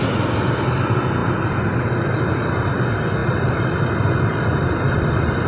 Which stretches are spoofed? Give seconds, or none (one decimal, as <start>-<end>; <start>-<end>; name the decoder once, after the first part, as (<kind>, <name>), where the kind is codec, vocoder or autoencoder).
4.5-5.5 (vocoder, BigVGAN v2)